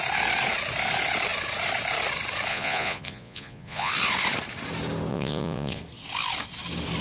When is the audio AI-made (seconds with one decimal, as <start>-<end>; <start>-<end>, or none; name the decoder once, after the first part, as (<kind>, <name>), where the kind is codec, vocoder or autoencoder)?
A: 2.5-3.9 (vocoder, Vocos); 5.1-5.8